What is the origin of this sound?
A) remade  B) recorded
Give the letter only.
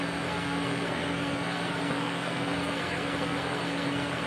A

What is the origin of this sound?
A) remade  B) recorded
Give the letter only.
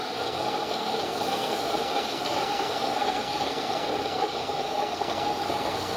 A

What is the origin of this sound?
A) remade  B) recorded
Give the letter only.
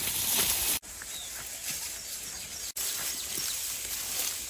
B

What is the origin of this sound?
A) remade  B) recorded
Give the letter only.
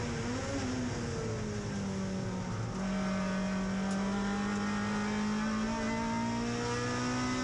B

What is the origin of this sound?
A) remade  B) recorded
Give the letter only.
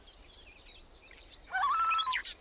B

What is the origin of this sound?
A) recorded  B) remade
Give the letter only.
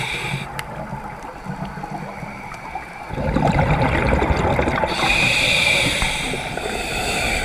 A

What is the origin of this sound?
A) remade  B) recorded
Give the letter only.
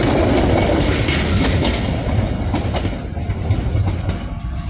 B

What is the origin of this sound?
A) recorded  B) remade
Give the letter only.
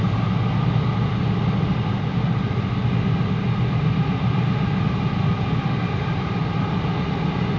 A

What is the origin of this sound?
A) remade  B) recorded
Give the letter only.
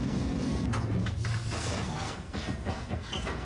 A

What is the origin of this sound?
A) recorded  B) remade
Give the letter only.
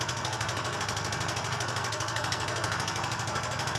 B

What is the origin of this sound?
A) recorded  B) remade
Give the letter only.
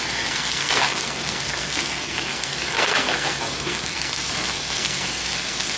B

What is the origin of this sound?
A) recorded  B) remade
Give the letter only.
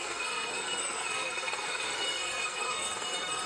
B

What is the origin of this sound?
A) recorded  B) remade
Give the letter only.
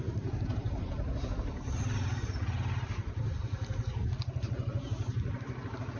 A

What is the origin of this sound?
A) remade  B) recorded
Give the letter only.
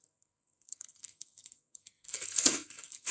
A